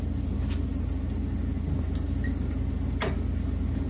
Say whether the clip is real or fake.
real